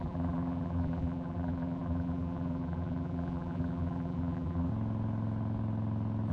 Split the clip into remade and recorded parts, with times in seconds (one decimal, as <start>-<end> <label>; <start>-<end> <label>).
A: 0.0-4.7 remade; 4.7-6.3 recorded